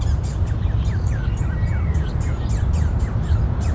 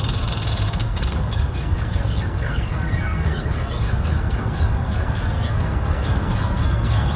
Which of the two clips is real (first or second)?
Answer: first